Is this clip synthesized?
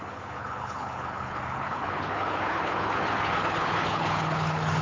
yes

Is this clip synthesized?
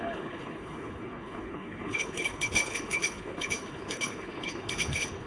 yes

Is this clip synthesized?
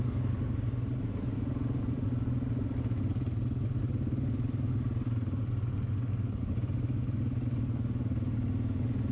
no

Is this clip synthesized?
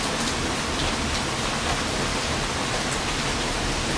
no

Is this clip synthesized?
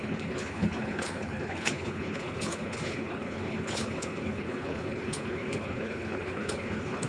yes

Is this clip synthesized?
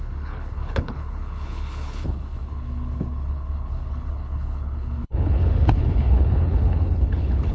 yes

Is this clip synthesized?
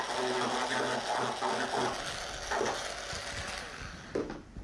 no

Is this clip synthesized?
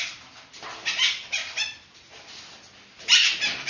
no